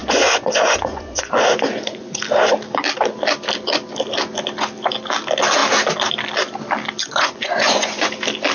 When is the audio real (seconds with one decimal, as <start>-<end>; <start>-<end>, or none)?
2.2-7.0; 8.1-8.5